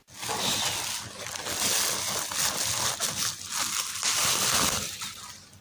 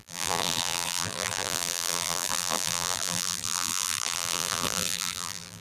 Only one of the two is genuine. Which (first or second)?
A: first